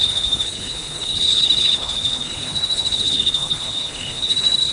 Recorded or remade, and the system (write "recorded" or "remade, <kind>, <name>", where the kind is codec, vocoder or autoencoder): remade, codec, HILCodec